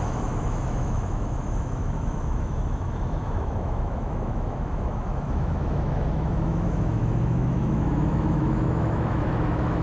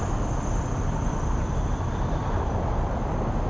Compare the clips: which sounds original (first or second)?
second